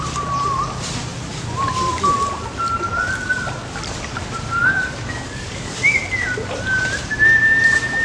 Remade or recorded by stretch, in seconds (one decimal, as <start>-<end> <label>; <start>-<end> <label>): 0.0-4.6 recorded; 4.6-6.0 remade; 6.0-8.0 recorded